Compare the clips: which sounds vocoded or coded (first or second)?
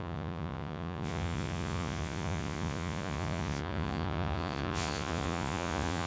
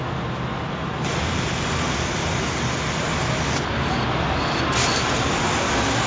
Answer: first